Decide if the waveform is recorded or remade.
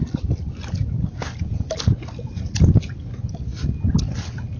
recorded